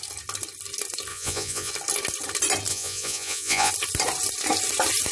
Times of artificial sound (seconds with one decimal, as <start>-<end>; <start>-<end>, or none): 1.1-1.7; 2.7-3.7